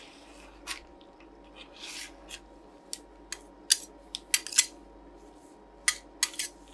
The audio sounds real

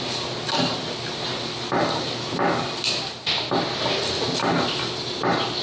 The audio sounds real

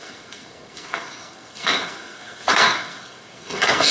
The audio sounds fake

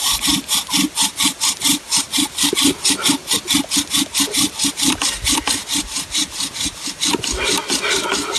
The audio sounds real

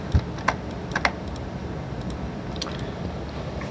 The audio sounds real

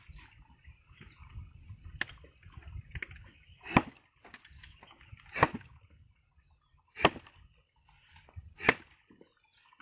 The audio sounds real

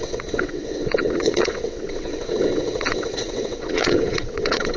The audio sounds fake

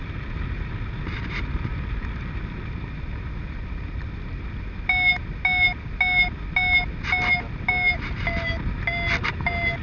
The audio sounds real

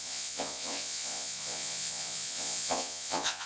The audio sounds fake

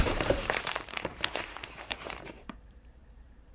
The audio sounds fake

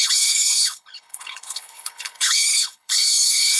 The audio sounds fake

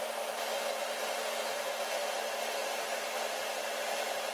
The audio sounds real